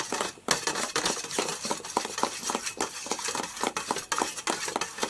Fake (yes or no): no